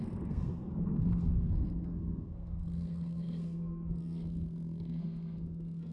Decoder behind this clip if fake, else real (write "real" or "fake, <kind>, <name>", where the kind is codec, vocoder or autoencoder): fake, codec, SNAC